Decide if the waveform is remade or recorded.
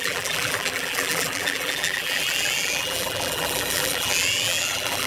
remade